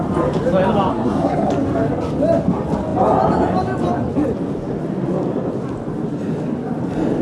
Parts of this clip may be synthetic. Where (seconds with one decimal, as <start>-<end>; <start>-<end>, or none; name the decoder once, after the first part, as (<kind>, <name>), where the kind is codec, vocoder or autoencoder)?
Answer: 0.9-1.5 (codec, SNAC)